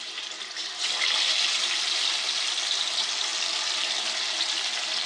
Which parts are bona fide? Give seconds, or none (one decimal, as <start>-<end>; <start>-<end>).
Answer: 0.0-5.1

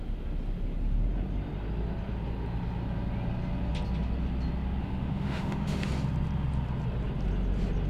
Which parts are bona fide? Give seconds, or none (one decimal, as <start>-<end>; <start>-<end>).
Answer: 0.0-4.8; 5.9-7.9

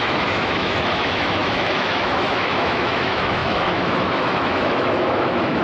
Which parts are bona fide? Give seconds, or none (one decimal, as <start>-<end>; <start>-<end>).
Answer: none

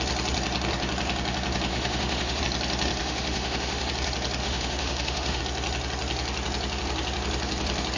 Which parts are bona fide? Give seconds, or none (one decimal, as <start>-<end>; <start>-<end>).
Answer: 0.0-1.7; 2.4-3.0; 3.9-4.4; 5.4-8.0

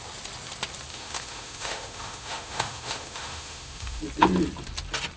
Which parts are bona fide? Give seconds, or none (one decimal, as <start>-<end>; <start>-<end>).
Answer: 0.0-0.9; 4.0-5.2